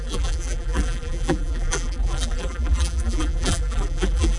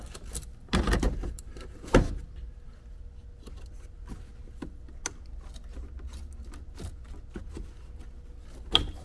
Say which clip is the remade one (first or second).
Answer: first